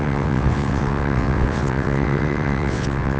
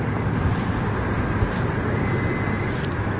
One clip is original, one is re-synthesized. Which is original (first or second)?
second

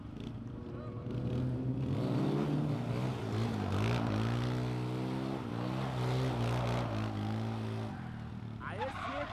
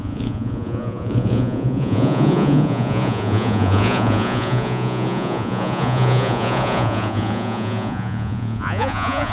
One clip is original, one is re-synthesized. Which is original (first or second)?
first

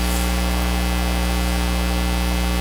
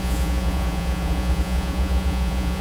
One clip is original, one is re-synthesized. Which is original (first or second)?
first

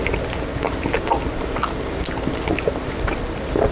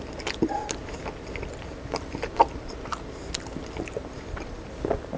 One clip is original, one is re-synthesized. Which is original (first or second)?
first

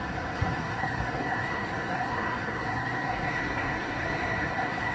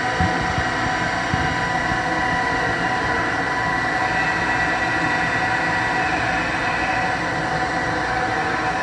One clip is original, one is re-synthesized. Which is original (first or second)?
second